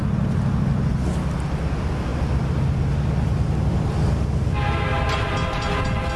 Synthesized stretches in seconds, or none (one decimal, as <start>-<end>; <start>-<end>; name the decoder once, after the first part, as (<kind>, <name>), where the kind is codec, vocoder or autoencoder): none